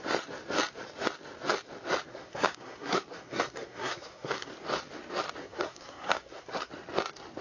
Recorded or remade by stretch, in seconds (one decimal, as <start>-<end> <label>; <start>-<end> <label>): 0.0-2.1 recorded; 2.1-4.5 remade; 4.5-5.4 recorded; 5.4-6.7 remade; 6.7-7.4 recorded